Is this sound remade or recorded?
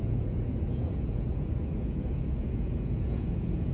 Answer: remade